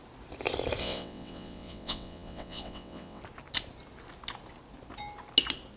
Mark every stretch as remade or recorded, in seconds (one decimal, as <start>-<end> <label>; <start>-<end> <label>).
0.0-0.8 recorded; 0.8-3.2 remade; 3.2-5.8 recorded